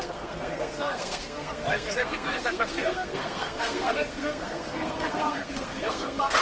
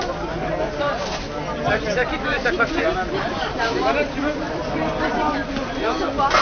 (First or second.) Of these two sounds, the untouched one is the second